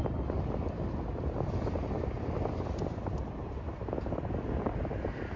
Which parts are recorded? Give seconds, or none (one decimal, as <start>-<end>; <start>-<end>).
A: 0.0-5.4